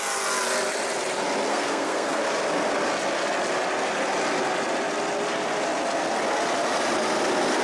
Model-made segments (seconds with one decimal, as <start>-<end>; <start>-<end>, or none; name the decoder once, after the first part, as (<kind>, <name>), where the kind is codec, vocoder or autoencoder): 1.5-2.2 (codec, SNAC)